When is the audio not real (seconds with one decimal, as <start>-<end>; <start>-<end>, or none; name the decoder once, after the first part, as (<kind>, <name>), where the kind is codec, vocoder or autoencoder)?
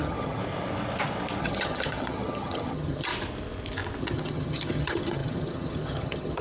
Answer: 0.0-0.4 (vocoder, HiFi-GAN); 1.4-3.1; 4.0-6.4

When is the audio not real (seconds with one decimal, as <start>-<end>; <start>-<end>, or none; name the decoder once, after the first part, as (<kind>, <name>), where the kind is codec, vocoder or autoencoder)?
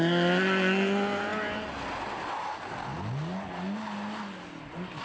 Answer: none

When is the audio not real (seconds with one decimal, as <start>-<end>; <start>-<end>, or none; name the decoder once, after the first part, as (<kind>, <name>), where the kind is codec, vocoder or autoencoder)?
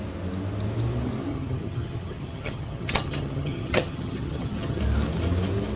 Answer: 1.3-4.8 (vocoder, HiFi-GAN)